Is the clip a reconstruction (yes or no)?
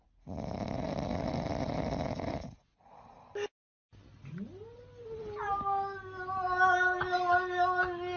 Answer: no